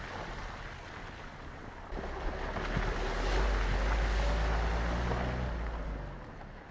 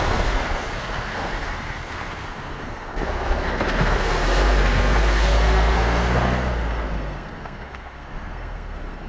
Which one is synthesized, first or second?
second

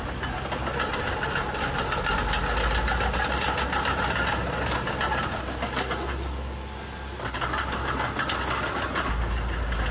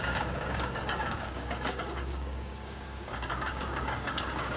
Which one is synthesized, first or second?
second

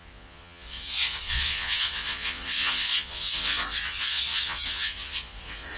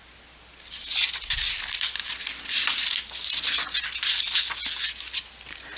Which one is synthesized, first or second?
first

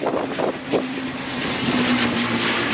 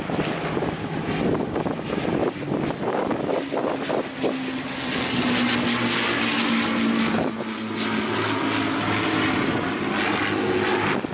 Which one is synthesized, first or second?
first